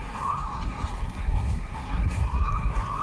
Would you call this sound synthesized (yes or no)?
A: yes